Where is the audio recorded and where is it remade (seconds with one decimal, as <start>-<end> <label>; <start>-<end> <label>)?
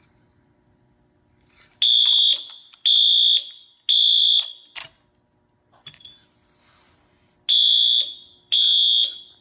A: 0.0-9.4 recorded